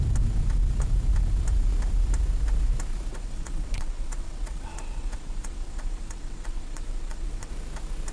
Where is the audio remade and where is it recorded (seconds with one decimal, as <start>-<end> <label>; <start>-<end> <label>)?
0.0-3.1 recorded; 3.1-7.5 remade; 7.5-8.1 recorded